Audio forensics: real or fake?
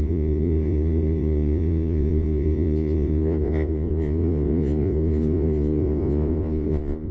fake